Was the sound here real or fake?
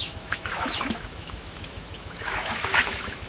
fake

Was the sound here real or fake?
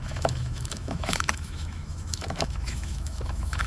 fake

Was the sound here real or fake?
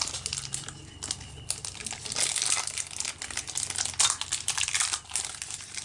real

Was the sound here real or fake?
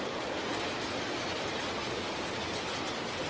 real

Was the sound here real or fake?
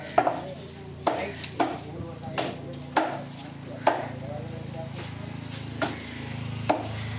real